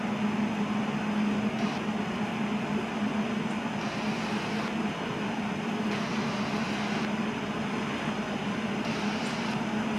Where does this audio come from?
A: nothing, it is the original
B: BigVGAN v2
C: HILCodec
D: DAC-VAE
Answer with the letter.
A